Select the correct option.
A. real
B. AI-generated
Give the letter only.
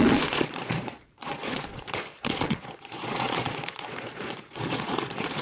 B